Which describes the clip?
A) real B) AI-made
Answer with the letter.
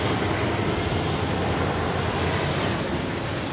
A